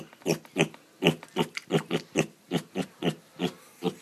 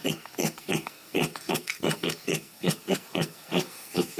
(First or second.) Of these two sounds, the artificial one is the second